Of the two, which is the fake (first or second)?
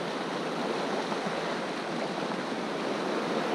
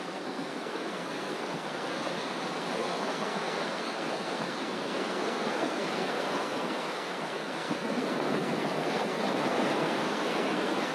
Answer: second